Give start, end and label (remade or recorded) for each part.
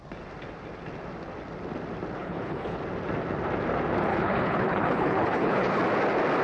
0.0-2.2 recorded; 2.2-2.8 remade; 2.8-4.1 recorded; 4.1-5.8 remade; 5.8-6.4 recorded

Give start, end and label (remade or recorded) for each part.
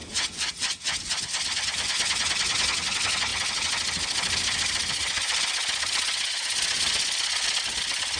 0.0-8.2 recorded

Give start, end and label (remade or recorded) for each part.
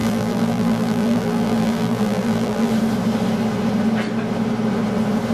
0.0-2.7 remade; 2.7-5.3 recorded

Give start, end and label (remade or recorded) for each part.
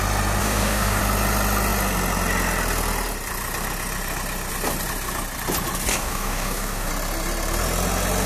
0.0-0.4 recorded; 0.4-1.0 remade; 1.0-5.9 recorded; 5.9-6.9 remade; 6.9-8.3 recorded